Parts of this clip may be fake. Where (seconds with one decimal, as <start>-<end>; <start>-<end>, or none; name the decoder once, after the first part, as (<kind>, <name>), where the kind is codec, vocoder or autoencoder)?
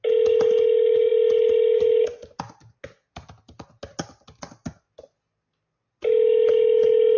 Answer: none